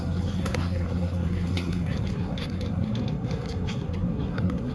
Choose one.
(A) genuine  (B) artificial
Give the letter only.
B